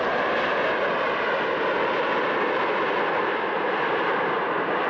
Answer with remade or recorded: recorded